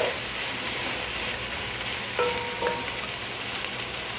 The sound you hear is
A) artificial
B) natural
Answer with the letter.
B